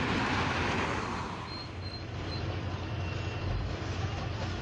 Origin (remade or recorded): recorded